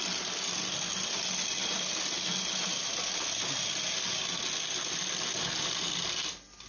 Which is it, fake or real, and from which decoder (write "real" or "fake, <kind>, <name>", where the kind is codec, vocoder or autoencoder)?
real